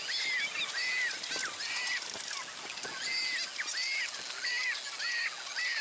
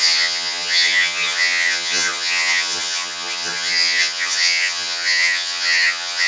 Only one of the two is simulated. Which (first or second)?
second